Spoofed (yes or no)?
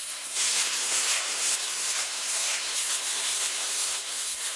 yes